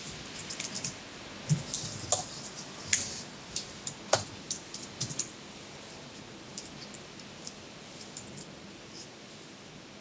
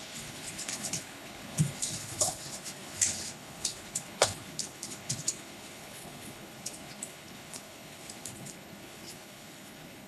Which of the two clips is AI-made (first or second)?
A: second